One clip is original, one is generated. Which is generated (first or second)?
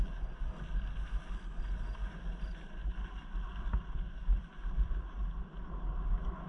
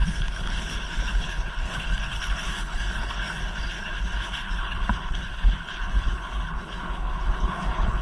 second